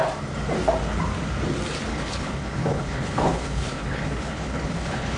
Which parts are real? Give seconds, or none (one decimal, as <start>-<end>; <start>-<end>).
0.0-1.9